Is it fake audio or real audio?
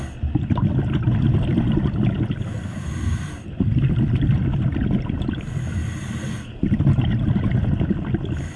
real